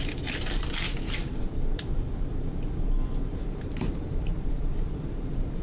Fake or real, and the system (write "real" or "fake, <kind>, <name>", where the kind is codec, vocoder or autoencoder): fake, vocoder, BigVGAN v2